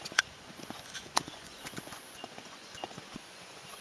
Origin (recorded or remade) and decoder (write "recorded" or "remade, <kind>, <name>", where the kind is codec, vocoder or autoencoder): remade, vocoder, Vocos